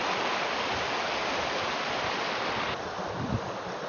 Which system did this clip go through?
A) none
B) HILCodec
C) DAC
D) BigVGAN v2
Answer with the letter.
A